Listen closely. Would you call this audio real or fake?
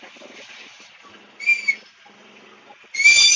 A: real